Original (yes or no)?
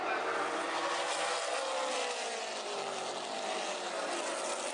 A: yes